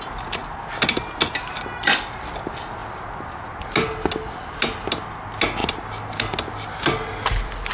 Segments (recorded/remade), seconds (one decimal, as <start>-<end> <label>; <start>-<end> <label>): 0.0-7.7 recorded